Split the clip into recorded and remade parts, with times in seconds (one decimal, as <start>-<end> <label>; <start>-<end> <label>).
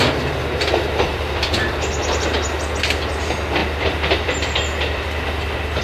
0.0-1.1 recorded; 1.1-1.7 remade; 1.7-3.6 recorded; 3.6-5.8 remade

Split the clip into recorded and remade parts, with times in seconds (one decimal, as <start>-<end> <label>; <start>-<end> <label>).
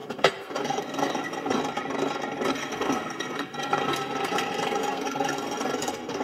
0.0-1.6 remade; 1.6-2.5 recorded; 2.5-6.2 remade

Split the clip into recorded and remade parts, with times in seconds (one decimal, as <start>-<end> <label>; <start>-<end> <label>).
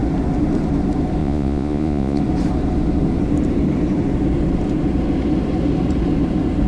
0.0-1.2 recorded; 1.2-2.2 remade; 2.2-6.7 recorded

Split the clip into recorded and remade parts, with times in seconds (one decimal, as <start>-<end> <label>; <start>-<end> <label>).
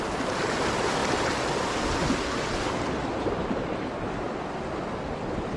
0.0-5.6 recorded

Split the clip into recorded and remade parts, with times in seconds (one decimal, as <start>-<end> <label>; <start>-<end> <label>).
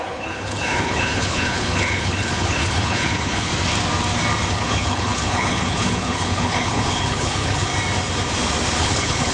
0.0-3.5 remade; 3.5-4.5 recorded; 4.5-7.7 remade; 7.7-8.8 recorded; 8.8-9.3 remade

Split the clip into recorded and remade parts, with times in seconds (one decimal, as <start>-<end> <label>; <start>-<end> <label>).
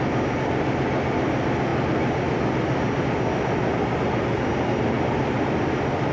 0.0-4.5 recorded; 4.5-6.1 remade